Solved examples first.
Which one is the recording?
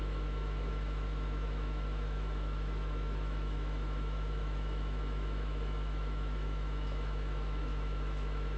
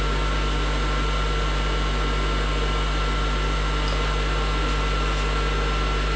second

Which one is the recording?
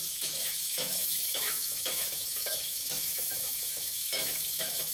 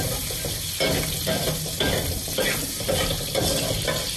second